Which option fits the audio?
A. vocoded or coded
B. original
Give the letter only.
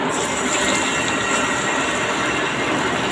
B